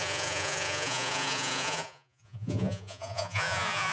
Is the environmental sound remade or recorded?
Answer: remade